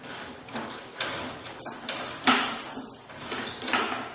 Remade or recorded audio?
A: recorded